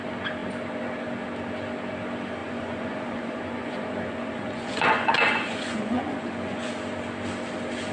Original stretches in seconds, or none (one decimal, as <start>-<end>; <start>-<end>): 0.0-2.4; 6.7-7.9